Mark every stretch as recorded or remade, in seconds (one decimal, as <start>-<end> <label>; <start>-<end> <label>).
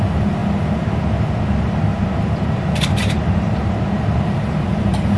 0.0-1.9 recorded; 1.9-5.2 remade